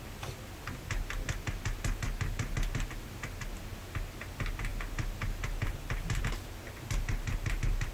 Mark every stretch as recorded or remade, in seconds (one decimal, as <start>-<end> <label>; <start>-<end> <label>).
0.0-7.9 recorded